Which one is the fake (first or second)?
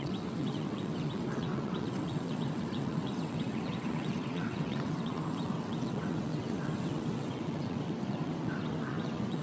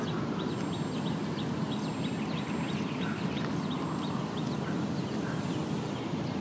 first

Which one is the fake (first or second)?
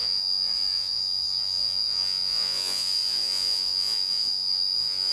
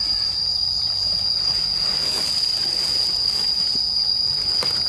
first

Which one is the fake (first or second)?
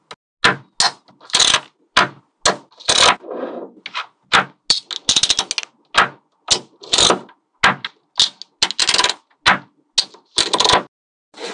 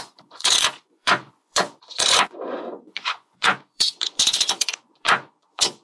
second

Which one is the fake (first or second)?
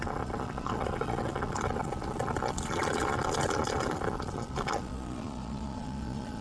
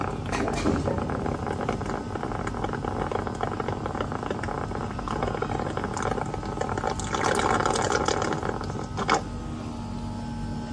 first